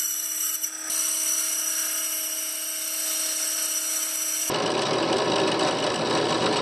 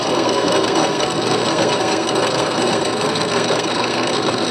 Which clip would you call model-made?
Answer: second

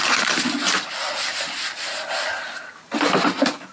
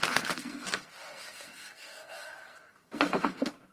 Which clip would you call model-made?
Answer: second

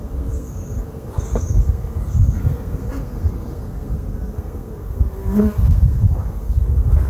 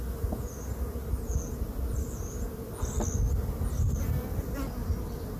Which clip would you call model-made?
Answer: first